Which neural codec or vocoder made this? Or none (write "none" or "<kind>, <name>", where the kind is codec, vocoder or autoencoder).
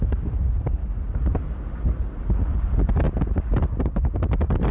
none